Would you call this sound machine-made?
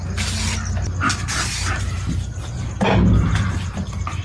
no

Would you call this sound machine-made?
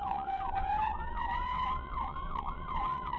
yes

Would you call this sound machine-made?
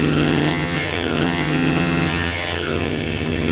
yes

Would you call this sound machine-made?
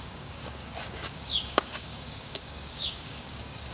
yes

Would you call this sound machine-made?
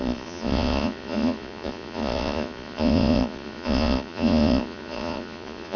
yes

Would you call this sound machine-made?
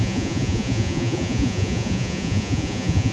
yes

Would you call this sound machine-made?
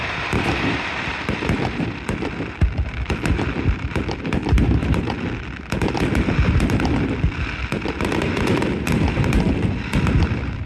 yes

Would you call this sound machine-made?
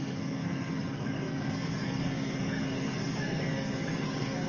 yes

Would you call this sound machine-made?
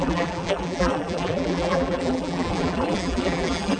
yes